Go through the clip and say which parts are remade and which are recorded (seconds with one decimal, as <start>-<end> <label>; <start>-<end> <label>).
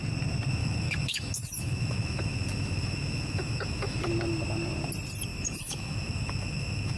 0.0-0.6 recorded; 0.6-4.1 remade; 4.1-5.3 recorded; 5.3-7.0 remade